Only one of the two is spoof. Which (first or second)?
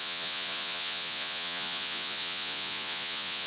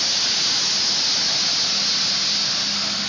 first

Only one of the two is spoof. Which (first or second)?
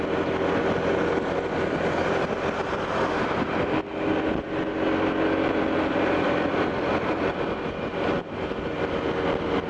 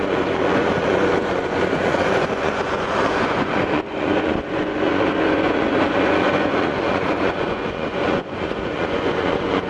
second